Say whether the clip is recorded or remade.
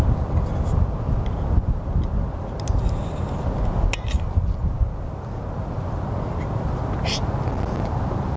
recorded